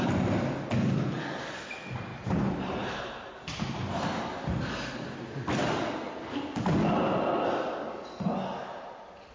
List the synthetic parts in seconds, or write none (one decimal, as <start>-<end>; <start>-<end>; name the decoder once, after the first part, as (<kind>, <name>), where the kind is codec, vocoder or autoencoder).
2.1-4.4 (vocoder, BigVGAN v2)